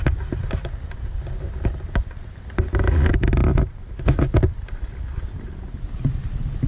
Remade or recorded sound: recorded